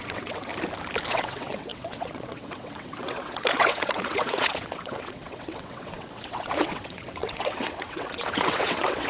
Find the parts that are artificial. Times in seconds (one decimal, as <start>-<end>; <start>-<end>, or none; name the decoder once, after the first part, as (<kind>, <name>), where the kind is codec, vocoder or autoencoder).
0.0-0.5 (vocoder, WaveNeXt); 1.1-9.1